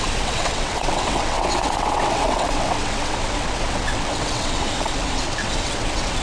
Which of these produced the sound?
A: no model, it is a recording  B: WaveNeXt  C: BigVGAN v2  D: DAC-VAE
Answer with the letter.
B